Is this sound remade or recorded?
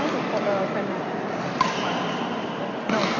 recorded